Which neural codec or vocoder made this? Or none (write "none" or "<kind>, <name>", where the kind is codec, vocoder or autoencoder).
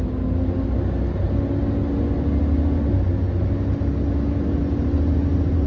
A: none